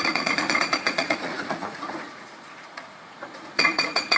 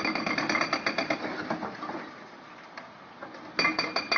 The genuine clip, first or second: second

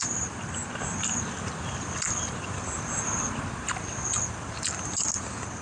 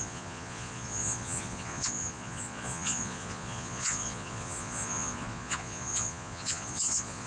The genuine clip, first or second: first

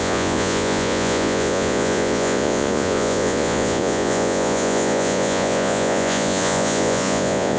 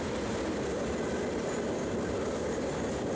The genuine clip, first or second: second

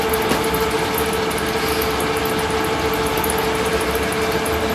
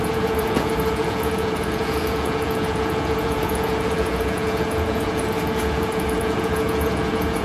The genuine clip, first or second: first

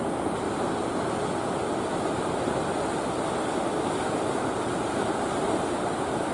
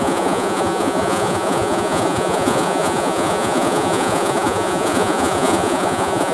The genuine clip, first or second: first